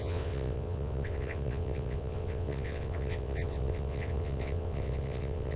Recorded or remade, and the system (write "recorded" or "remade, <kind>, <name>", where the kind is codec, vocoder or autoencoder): remade, vocoder, WaveNeXt